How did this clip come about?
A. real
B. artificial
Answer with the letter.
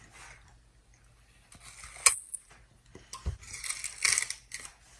A